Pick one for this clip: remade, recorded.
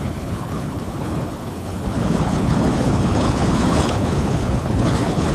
remade